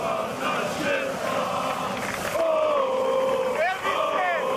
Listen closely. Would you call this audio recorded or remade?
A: recorded